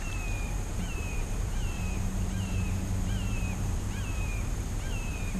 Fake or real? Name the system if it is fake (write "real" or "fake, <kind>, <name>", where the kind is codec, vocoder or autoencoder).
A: fake, vocoder, BigVGAN v2